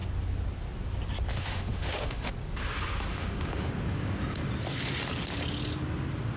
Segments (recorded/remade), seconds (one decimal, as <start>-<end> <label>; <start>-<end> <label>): 0.0-1.3 recorded; 1.3-2.3 remade; 2.3-3.1 recorded; 3.1-3.7 remade; 3.7-6.4 recorded